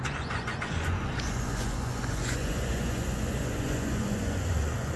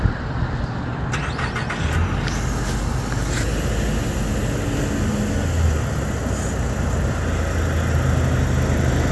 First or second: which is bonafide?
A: second